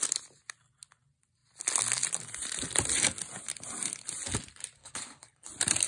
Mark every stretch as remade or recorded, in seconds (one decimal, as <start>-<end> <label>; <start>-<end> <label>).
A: 0.0-4.8 recorded; 4.8-5.5 remade; 5.5-5.9 recorded